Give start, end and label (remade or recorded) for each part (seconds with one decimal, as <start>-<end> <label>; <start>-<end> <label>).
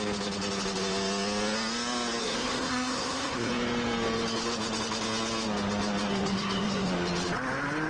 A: 0.0-2.2 recorded; 2.2-3.5 remade; 3.5-6.1 recorded; 6.1-6.9 remade; 6.9-7.9 recorded